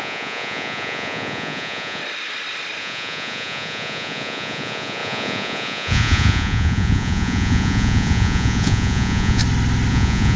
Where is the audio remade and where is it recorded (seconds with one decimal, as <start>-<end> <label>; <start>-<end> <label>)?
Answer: 0.0-2.0 remade; 2.0-2.8 recorded; 2.8-9.4 remade; 9.4-9.9 recorded; 9.9-10.4 remade